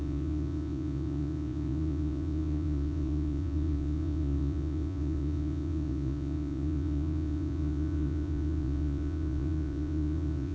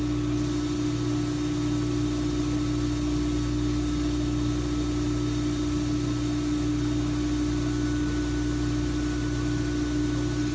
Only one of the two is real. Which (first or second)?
second